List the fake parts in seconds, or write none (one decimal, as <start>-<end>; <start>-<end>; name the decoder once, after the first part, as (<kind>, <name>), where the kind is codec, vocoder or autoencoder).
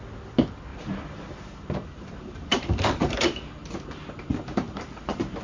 0.7-3.7 (vocoder, BigVGAN v2); 4.3-5.0